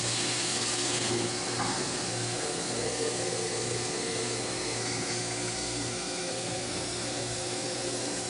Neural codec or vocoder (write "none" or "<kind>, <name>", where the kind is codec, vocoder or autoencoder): codec, SNAC